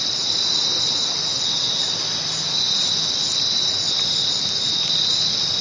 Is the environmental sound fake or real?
real